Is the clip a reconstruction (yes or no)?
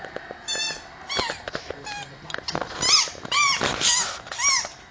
no